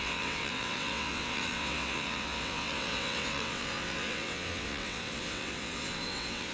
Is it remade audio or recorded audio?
remade